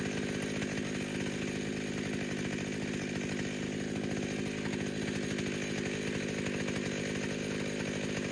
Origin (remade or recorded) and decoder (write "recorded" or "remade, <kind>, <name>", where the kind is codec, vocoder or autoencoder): recorded